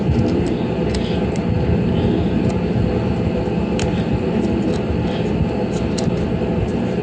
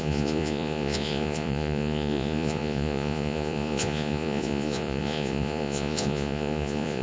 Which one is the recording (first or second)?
first